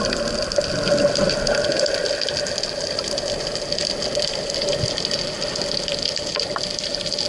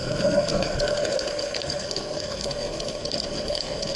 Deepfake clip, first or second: second